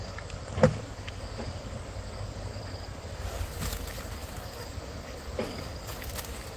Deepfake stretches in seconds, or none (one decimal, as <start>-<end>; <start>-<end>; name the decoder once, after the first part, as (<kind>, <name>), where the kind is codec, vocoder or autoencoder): 0.0-2.5 (codec, DAC); 3.2-6.6